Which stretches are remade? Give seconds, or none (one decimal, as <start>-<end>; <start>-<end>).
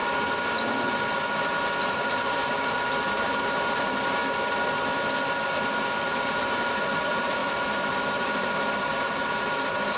1.8-4.2; 5.9-10.0